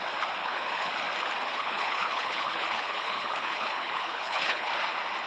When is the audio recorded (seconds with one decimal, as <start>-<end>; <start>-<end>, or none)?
0.0-0.4; 0.9-1.5; 4.7-5.3